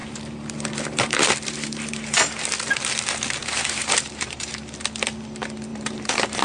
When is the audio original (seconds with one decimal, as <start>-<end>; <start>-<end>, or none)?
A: 2.2-3.4; 4.5-5.7